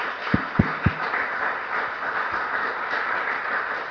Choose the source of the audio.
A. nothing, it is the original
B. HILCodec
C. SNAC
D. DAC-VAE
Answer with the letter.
A